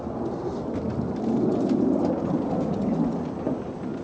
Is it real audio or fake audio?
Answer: real